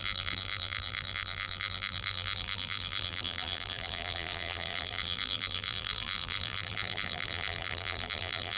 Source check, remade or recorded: remade